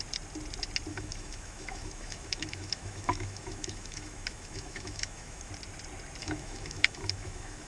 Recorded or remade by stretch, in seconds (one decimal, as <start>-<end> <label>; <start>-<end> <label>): 0.0-0.9 recorded; 0.9-5.5 remade; 5.5-6.2 recorded; 6.2-7.7 remade